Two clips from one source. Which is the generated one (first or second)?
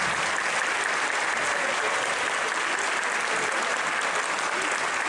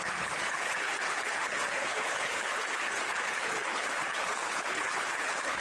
second